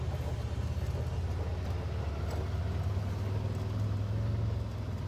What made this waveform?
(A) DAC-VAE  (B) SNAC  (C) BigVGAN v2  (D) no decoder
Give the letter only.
D